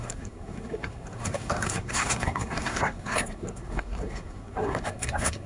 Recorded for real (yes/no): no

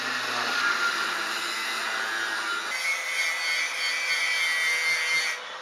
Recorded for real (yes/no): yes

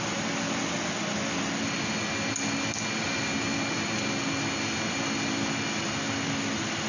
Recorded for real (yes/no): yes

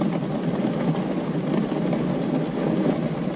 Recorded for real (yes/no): yes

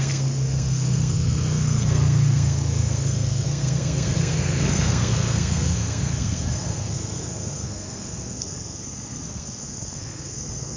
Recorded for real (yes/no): no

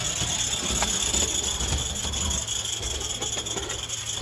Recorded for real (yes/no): yes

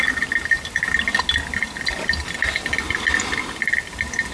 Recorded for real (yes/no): yes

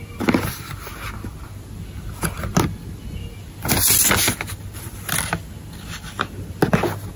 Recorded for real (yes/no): yes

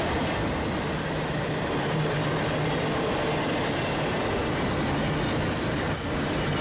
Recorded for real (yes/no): yes